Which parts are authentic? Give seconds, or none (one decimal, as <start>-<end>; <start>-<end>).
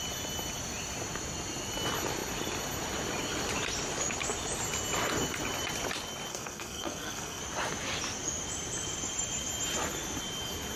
0.0-6.3; 7.4-10.8